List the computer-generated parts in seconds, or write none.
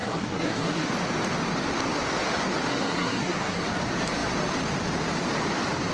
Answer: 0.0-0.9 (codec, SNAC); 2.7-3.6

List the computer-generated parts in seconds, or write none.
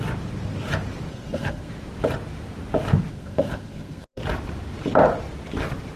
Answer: 1.1-1.7 (codec, SNAC); 3.1-4.2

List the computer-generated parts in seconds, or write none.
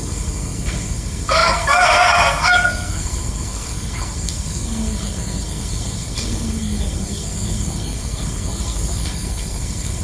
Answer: 0.0-10.0 (codec, SNAC)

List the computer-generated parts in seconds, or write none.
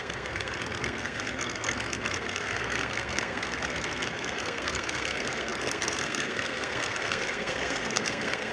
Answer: 0.0-8.5 (codec, SNAC)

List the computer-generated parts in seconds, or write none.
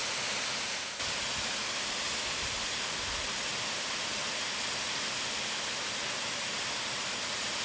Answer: none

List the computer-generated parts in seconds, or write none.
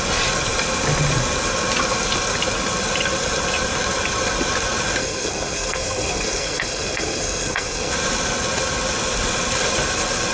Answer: 5.0-7.9 (codec, SNAC)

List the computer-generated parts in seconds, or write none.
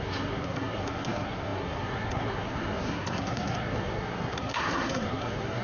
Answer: 0.0-5.6 (codec, SNAC)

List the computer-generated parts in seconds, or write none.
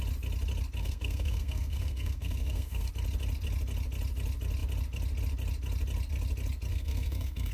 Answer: 0.8-2.9 (codec, SNAC); 6.7-7.5